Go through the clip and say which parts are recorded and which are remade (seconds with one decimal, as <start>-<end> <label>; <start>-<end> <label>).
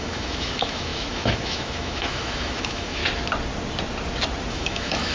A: 0.0-3.0 remade; 3.0-4.5 recorded; 4.5-5.1 remade